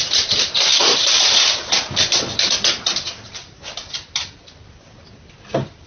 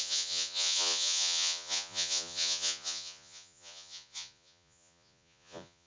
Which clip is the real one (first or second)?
first